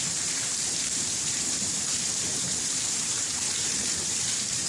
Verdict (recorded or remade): remade